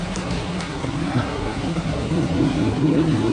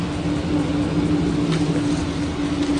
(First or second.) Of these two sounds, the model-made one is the first